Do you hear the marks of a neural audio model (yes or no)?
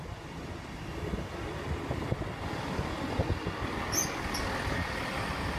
no